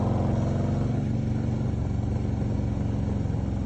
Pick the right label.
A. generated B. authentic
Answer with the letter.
B